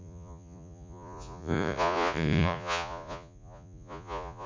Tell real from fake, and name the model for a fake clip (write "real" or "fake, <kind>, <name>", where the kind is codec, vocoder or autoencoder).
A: fake, vocoder, Vocos